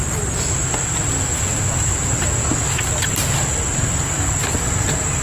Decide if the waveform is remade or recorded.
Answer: recorded